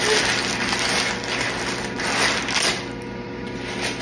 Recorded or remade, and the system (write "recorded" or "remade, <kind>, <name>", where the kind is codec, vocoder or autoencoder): recorded